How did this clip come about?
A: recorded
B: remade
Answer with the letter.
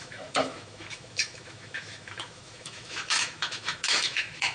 B